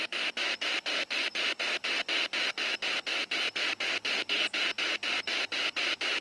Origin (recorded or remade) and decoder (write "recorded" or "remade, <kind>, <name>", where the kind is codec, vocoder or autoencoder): recorded